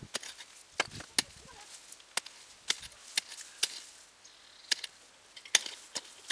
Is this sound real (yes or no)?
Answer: yes